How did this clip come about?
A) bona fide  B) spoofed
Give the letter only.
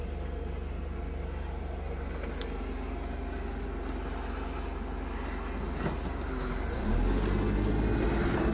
A